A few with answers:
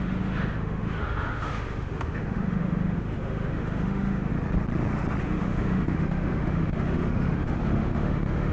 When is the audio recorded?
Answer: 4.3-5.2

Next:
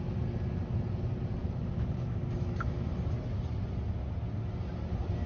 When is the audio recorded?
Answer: 0.0-1.4; 2.9-5.3